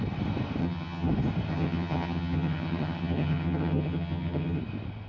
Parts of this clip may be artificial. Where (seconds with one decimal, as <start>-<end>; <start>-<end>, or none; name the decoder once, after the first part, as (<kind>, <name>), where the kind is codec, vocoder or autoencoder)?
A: 0.6-1.1 (vocoder, HiFi-GAN); 1.5-4.6